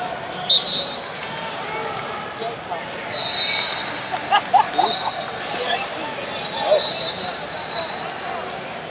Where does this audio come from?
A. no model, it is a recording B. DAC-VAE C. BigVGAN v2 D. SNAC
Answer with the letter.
A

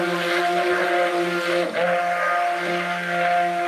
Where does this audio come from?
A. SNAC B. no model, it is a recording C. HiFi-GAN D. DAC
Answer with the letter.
B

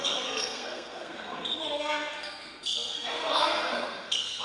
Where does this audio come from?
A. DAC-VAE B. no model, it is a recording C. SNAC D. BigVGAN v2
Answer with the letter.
C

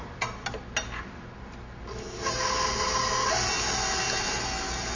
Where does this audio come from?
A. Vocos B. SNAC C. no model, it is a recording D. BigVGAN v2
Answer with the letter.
C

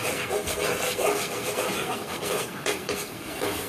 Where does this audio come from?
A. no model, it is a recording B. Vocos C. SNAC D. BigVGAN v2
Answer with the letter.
C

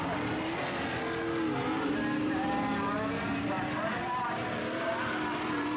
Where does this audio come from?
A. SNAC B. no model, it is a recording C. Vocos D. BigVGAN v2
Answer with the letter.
B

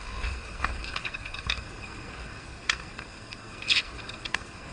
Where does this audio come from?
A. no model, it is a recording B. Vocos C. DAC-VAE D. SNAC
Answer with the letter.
D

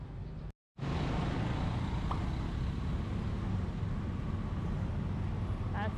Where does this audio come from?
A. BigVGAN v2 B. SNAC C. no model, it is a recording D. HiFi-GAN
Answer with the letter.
C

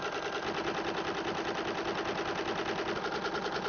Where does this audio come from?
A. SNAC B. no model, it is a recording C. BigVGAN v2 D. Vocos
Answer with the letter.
B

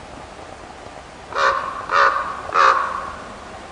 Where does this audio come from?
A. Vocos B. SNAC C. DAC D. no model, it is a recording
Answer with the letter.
D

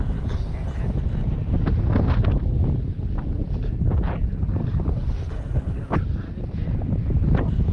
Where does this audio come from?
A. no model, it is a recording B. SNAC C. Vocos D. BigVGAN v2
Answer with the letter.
A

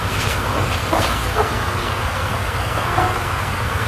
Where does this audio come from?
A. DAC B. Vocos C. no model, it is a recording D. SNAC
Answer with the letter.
D